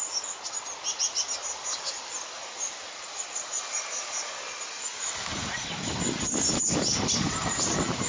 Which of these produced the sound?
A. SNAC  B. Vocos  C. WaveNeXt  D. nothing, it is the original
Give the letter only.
D